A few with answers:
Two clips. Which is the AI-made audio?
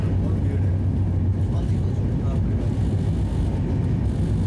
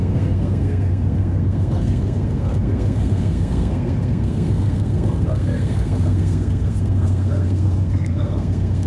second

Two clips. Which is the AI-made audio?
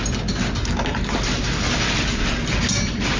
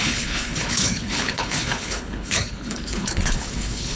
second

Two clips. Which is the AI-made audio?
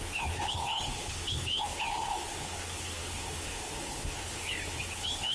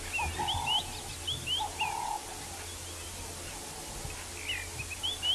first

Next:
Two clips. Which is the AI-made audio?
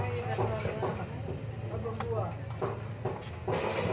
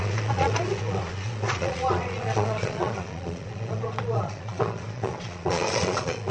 second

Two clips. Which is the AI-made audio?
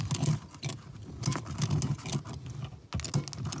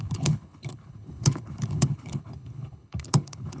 second